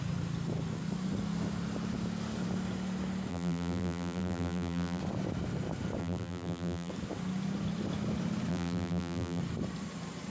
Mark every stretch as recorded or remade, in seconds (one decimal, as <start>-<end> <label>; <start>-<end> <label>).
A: 0.0-3.3 recorded; 3.3-5.0 remade; 5.0-6.0 recorded; 6.0-6.9 remade; 6.9-8.5 recorded; 8.5-9.4 remade; 9.4-10.3 recorded